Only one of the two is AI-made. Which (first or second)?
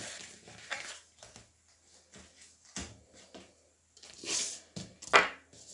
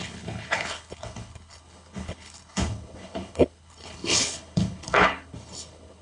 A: second